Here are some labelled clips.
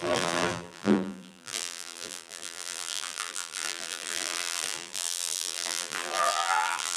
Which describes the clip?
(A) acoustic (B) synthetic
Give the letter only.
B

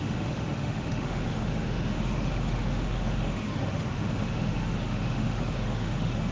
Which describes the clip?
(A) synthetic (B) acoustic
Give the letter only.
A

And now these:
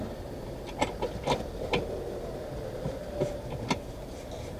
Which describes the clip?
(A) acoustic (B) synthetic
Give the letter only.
A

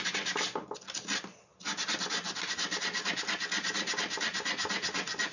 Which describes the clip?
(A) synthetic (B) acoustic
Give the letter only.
B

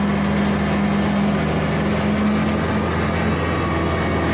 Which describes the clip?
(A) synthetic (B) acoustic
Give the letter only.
B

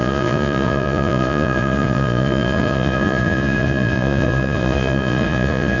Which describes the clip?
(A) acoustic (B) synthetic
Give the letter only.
B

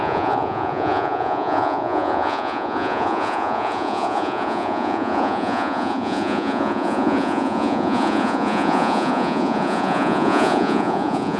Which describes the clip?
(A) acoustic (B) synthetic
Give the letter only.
B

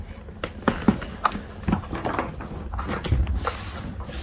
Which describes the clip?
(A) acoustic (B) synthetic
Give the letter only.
A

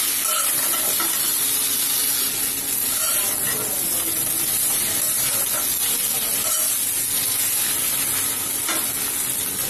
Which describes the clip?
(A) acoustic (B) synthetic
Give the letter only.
A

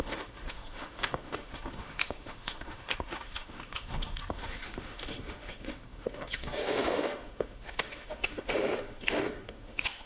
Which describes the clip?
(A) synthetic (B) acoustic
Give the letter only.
A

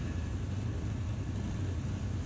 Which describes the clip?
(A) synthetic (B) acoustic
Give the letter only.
B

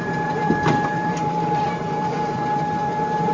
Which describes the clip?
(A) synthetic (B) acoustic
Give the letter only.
A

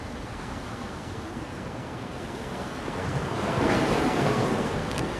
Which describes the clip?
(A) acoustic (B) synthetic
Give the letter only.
B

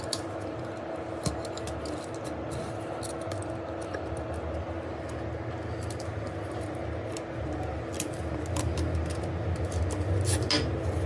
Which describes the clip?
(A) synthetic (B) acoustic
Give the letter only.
B